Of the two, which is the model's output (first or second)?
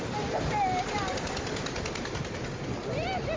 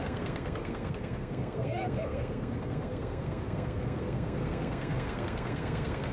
second